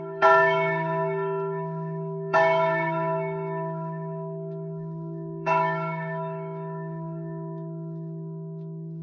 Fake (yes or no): yes